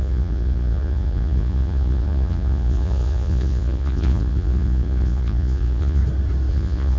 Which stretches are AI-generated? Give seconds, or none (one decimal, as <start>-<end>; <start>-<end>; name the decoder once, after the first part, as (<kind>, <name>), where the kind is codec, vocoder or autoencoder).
0.0-6.0 (vocoder, Vocos); 6.5-7.0